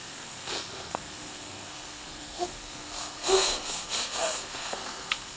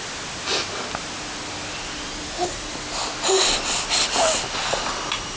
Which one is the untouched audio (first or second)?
second